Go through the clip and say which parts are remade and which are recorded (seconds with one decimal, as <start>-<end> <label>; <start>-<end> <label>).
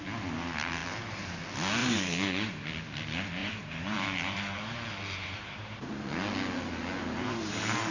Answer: 0.0-0.8 recorded; 0.8-1.4 remade; 1.4-1.8 recorded; 1.8-2.7 remade; 2.7-3.4 recorded; 3.4-5.9 remade; 5.9-7.9 recorded